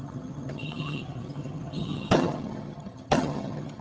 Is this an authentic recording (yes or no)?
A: no